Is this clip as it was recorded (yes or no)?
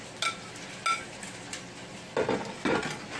yes